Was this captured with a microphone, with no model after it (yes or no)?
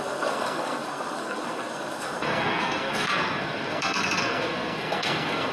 no